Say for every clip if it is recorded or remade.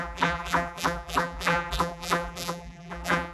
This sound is remade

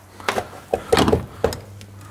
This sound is recorded